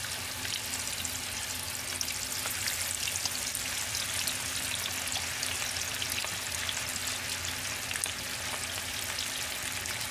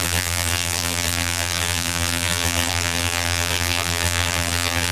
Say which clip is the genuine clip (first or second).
first